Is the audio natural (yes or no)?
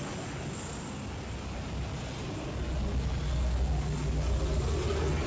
yes